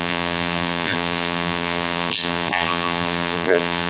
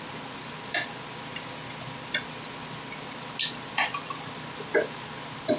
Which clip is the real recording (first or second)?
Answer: second